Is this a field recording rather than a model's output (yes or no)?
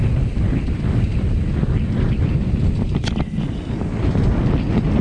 yes